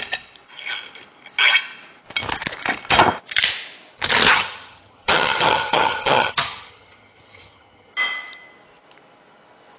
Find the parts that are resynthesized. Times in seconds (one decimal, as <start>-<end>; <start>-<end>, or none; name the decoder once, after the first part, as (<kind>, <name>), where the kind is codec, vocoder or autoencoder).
4.3-7.9 (vocoder, HiFi-GAN)